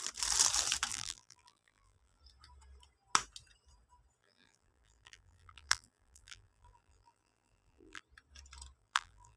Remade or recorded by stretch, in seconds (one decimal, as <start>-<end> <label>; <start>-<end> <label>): 0.0-0.9 recorded; 0.9-2.2 remade; 2.2-4.2 recorded; 4.2-8.0 remade; 8.0-8.8 recorded; 8.8-9.4 remade